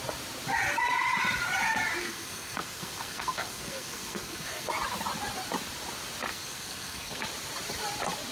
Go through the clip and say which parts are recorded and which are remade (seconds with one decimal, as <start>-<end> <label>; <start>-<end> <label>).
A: 0.0-2.0 recorded; 2.0-4.7 remade; 4.7-6.3 recorded; 6.3-7.2 remade; 7.2-8.3 recorded